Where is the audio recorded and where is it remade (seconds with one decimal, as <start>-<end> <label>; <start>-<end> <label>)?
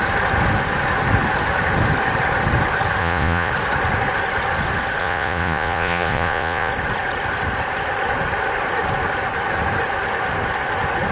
0.0-3.0 recorded; 3.0-3.5 remade; 3.5-5.0 recorded; 5.0-6.7 remade; 6.7-11.1 recorded